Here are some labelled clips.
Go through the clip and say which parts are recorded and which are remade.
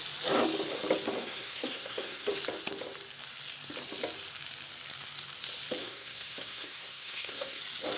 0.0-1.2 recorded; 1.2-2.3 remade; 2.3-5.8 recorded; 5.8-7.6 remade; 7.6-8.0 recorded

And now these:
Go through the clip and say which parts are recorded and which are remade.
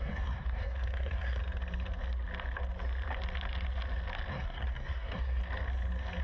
0.0-1.4 remade; 1.4-4.3 recorded; 4.3-5.4 remade; 5.4-6.2 recorded